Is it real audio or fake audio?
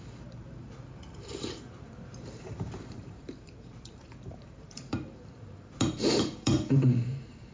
fake